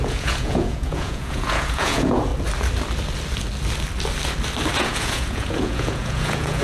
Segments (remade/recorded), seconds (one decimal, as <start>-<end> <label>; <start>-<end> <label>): 0.0-2.3 remade; 2.3-4.8 recorded; 4.8-6.6 remade